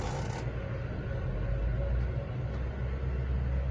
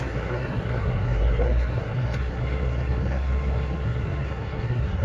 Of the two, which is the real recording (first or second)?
first